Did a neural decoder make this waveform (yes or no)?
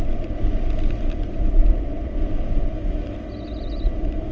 no